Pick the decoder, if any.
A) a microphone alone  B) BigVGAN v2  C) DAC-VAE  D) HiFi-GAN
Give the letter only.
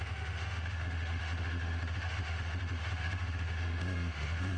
C